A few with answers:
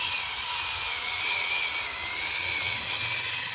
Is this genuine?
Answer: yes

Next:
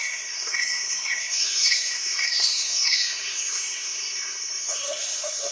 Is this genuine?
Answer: no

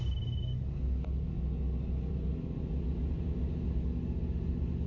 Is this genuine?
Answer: yes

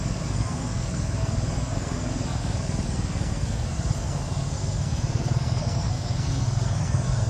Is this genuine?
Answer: no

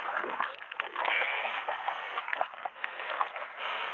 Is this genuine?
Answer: no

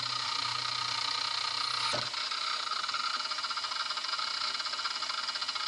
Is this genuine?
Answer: yes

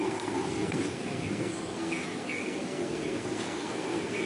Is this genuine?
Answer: no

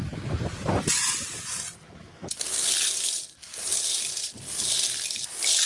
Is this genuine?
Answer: yes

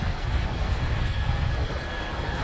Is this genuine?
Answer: no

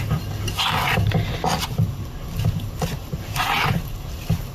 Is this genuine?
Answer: yes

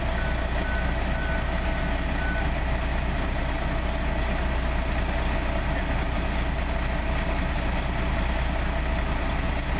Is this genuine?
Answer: yes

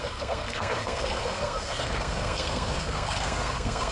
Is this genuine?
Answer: no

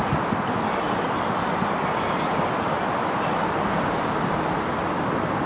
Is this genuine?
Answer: yes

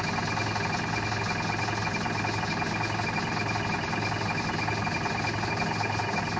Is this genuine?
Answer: yes